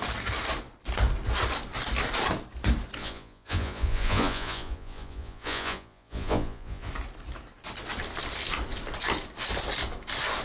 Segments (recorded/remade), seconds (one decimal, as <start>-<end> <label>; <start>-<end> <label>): 0.0-3.0 recorded; 3.0-6.9 remade; 6.9-10.4 recorded